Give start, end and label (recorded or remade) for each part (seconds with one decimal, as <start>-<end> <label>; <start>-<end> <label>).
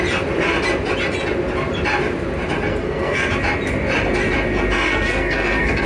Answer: 0.0-2.7 recorded; 2.7-3.3 remade; 3.3-4.9 recorded; 4.9-5.9 remade